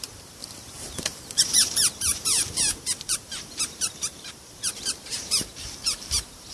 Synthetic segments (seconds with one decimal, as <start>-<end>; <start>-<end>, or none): 0.0-6.5